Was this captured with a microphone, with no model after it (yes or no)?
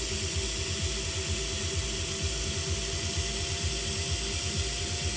yes